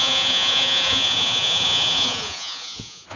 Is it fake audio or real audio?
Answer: fake